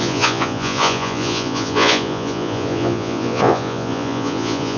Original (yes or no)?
no